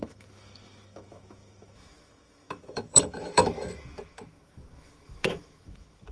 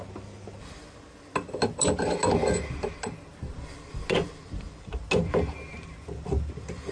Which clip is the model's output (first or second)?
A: first